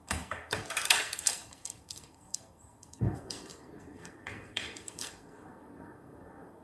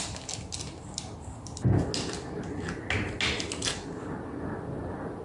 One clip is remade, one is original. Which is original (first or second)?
second